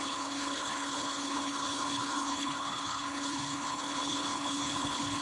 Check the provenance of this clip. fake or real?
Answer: fake